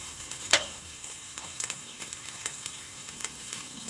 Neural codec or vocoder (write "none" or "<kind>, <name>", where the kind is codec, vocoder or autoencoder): codec, SNAC